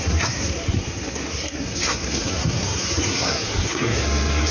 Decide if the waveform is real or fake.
fake